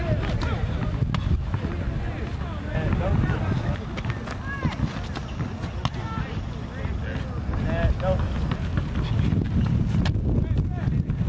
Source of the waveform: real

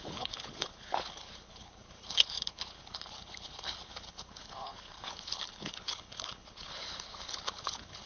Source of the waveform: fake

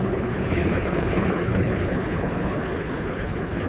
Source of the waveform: fake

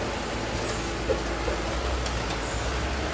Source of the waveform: real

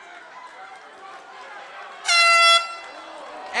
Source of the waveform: real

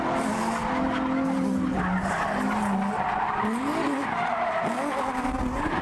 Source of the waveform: real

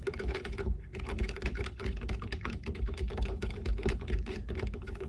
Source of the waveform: fake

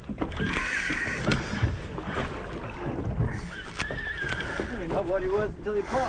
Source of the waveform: real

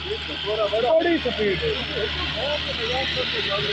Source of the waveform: real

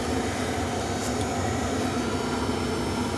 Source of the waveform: real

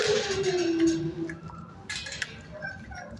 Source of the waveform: real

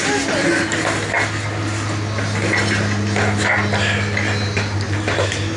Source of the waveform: real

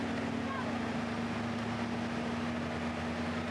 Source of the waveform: real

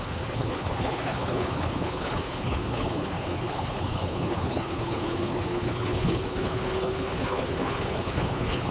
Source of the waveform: fake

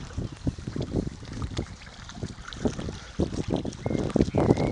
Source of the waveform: real